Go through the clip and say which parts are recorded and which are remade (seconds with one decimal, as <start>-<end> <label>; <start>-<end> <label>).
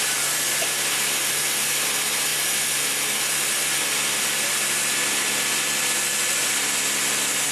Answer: 0.0-7.5 recorded